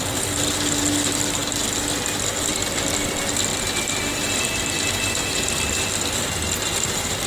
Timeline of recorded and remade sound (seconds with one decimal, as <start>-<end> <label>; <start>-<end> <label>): 0.0-3.5 recorded; 3.5-7.3 remade